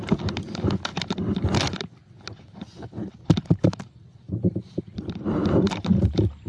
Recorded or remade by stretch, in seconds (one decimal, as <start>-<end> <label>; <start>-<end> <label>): 0.0-6.5 recorded